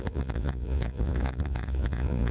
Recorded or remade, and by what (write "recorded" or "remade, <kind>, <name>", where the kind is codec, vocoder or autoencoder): remade, vocoder, Vocos